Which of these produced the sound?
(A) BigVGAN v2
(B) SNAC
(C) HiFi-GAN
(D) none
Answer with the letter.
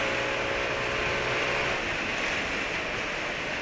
D